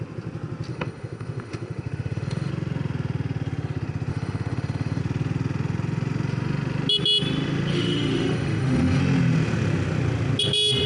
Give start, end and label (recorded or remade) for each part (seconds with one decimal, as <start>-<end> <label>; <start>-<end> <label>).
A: 0.0-0.7 recorded; 0.7-2.5 remade; 2.5-4.1 recorded; 4.1-5.0 remade; 5.0-7.7 recorded; 7.7-9.0 remade; 9.0-10.9 recorded